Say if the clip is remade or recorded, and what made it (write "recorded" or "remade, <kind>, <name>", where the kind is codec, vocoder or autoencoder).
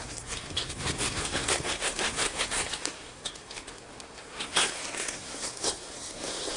remade, codec, SNAC